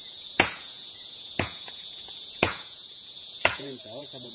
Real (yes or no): no